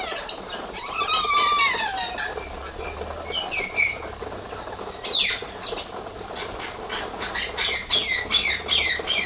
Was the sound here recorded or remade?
recorded